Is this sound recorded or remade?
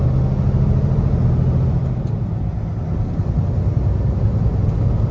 recorded